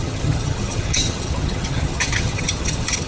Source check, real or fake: fake